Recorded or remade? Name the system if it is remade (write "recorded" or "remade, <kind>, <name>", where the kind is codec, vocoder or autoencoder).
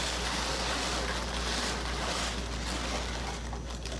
recorded